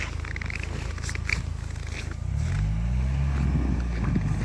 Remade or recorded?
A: recorded